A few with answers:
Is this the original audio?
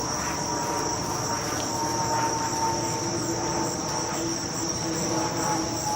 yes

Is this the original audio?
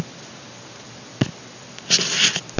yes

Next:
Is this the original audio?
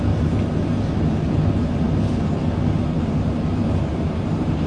yes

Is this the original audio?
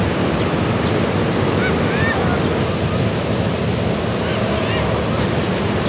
yes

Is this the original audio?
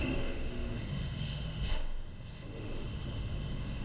no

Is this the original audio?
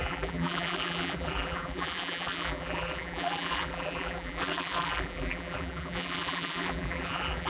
no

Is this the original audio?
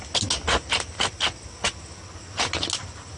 yes